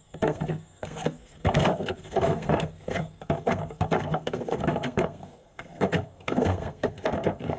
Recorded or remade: remade